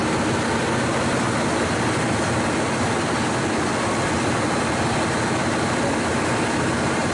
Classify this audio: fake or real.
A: real